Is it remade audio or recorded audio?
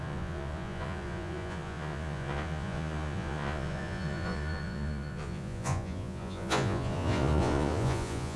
remade